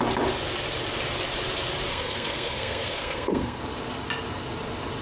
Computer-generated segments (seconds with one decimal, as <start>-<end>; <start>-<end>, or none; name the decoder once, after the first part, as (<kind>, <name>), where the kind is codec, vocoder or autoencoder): 1.9-3.6 (codec, SNAC)